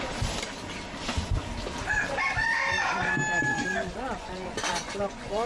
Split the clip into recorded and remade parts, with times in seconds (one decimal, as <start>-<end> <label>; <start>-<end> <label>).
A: 0.0-3.5 recorded; 3.5-5.5 remade